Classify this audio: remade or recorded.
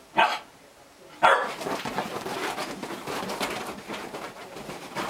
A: recorded